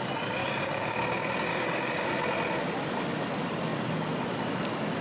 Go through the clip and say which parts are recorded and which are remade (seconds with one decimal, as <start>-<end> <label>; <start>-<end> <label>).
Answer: 0.0-0.4 recorded; 0.4-1.0 remade; 1.0-1.5 recorded; 1.5-2.1 remade; 2.1-5.0 recorded